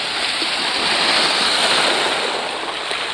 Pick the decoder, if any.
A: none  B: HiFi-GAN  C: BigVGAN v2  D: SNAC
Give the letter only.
A